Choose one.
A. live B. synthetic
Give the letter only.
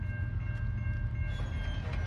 A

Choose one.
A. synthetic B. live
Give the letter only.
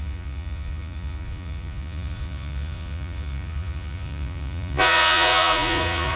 A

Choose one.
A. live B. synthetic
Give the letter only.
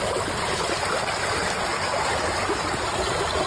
A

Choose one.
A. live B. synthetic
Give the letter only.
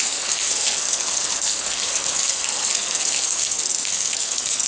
B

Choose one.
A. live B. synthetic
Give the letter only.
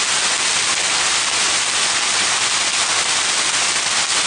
A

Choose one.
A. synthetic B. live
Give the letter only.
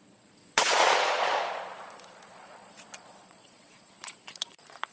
A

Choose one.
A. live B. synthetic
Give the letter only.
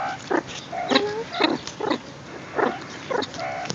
A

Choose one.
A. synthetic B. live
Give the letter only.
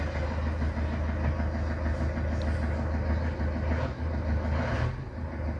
B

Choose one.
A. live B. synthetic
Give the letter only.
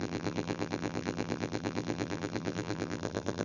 B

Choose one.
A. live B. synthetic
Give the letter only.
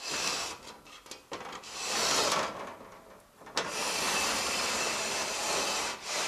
A